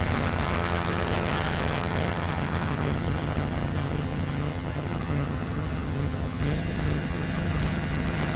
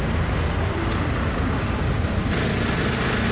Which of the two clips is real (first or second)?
second